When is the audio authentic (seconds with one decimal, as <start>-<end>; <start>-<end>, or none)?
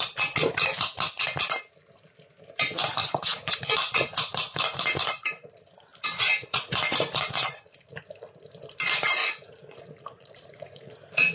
0.0-3.0; 5.5-5.9; 8.0-9.2; 10.9-11.3